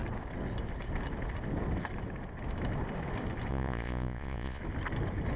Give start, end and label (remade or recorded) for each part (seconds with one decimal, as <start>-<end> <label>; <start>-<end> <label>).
0.0-3.5 recorded; 3.5-4.6 remade; 4.6-5.4 recorded